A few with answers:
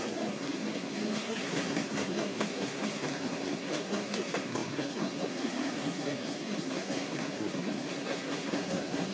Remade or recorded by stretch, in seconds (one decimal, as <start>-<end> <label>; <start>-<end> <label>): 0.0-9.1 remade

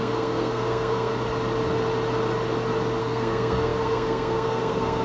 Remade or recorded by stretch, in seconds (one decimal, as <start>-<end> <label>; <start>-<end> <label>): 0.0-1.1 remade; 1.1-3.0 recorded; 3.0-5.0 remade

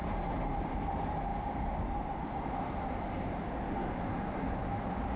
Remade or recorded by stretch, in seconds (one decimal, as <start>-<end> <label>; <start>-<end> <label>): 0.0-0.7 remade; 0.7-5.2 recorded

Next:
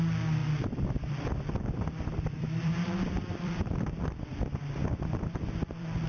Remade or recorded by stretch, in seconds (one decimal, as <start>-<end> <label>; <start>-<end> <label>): 0.0-0.4 recorded; 0.4-4.1 remade; 4.1-4.8 recorded; 4.8-6.1 remade

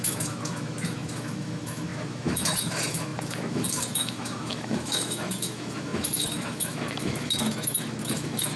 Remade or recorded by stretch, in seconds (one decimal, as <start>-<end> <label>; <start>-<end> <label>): 0.0-8.6 remade

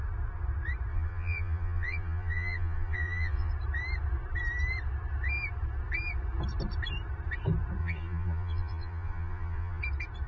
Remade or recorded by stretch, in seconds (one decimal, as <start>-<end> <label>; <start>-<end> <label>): 0.0-0.9 recorded; 0.9-3.5 remade; 3.5-7.8 recorded; 7.8-9.8 remade; 9.8-10.3 recorded